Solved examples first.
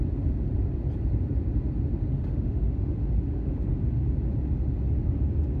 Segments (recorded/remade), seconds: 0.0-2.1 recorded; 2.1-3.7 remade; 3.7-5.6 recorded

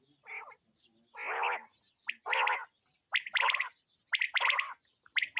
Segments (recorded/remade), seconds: 0.0-5.4 recorded

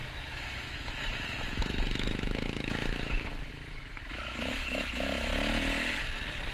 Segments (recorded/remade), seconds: 0.0-5.3 remade; 5.3-6.5 recorded

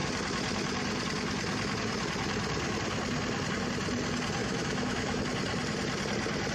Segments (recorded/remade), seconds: 0.0-4.4 recorded; 4.4-5.2 remade; 5.2-6.5 recorded

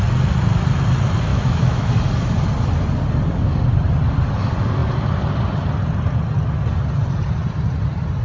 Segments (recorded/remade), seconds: 0.0-1.3 recorded; 1.3-1.9 remade; 1.9-8.2 recorded

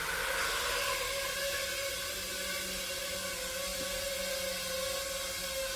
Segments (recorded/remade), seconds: 0.0-5.8 recorded